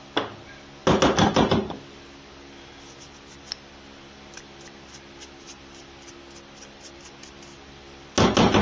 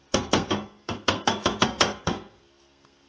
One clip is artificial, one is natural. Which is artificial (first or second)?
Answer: second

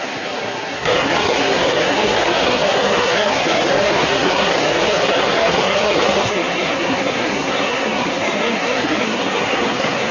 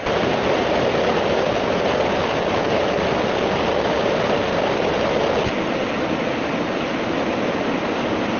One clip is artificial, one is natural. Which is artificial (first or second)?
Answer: first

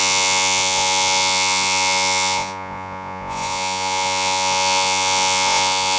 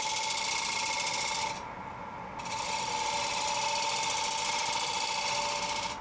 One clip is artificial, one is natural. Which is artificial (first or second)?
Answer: first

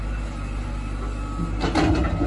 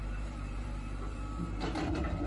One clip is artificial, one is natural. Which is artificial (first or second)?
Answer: second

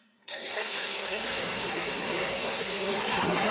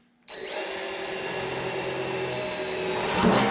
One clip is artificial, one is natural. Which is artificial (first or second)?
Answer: first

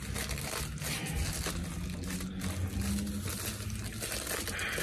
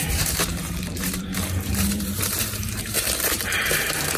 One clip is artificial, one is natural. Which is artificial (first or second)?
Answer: second